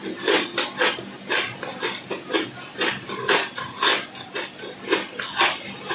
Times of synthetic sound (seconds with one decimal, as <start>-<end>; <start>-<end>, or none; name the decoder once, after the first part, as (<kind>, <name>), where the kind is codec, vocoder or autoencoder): none